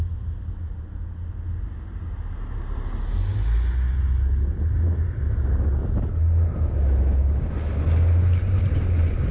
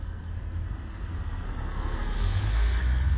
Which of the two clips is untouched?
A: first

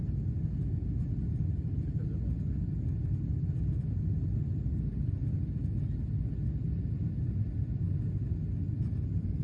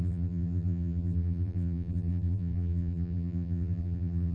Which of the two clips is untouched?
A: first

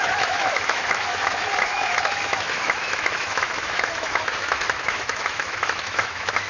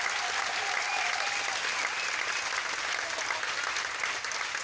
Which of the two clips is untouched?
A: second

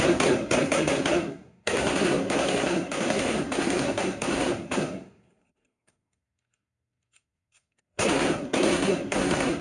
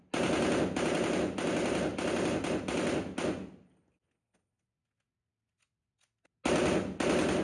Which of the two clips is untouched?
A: second